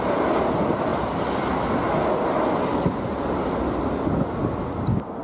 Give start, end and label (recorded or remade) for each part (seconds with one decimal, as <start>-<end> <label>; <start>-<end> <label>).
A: 0.0-5.2 recorded